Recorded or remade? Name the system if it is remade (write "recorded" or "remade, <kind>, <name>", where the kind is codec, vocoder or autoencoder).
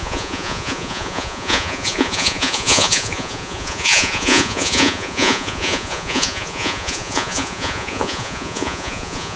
remade, vocoder, Vocos